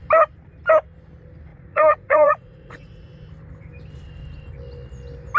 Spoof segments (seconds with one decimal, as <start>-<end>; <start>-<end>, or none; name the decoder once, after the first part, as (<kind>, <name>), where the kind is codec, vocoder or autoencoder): 1.5-3.3 (vocoder, Vocos)